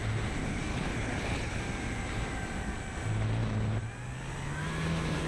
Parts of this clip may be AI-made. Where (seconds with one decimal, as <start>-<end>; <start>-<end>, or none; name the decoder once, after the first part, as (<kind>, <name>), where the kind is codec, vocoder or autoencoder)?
0.7-1.6 (codec, HILCodec)